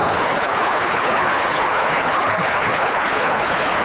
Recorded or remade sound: remade